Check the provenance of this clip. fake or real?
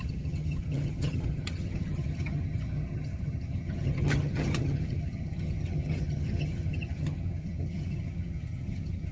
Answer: fake